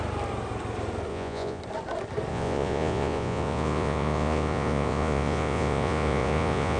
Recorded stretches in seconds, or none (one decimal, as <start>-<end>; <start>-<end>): 0.0-1.1; 1.6-2.3